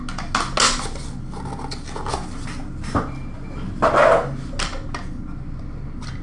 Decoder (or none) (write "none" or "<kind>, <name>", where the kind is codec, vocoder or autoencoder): none